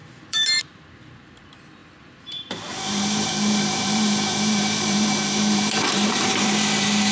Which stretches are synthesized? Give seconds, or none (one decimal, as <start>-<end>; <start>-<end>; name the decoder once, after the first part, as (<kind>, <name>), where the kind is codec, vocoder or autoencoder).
0.0-7.1 (vocoder, BigVGAN v2)